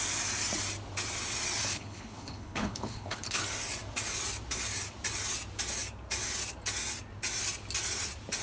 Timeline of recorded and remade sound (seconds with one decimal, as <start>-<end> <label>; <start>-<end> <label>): 0.0-1.7 recorded; 1.7-3.4 remade; 3.4-8.4 recorded